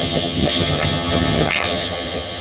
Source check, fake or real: fake